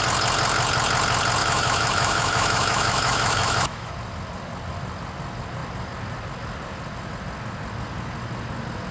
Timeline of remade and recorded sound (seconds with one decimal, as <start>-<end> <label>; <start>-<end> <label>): 0.0-1.4 recorded; 1.4-3.9 remade; 3.9-8.9 recorded